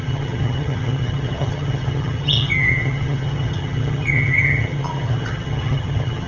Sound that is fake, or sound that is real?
fake